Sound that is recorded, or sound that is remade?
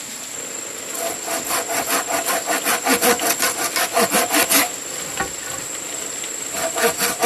recorded